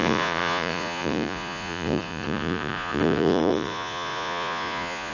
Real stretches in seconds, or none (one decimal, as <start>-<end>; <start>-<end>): none